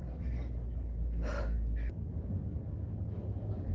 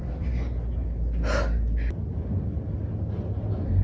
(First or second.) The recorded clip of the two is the second